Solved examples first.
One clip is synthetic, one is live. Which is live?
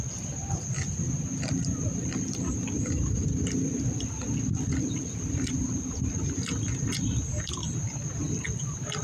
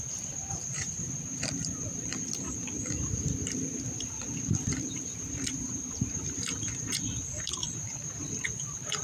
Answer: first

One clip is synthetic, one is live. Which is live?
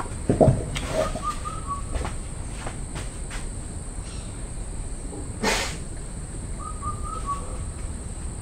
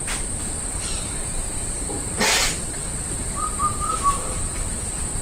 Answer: first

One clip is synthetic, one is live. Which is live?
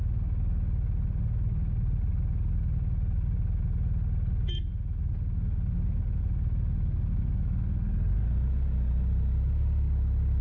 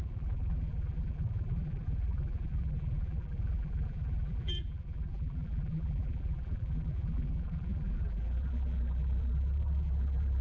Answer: first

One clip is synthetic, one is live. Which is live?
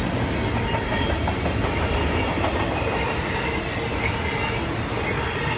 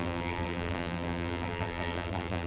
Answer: first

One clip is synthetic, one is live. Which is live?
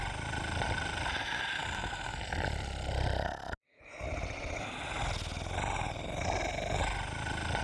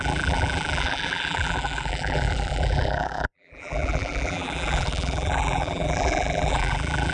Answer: first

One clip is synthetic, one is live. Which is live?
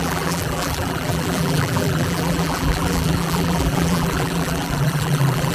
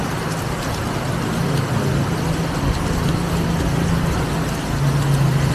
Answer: second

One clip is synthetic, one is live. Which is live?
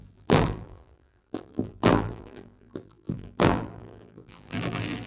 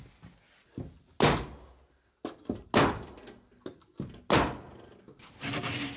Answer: second